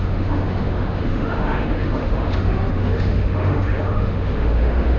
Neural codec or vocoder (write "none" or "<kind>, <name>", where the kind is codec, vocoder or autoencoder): autoencoder, DAC-VAE